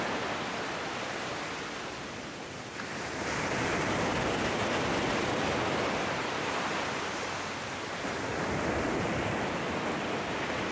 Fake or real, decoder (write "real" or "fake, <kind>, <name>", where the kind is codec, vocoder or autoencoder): real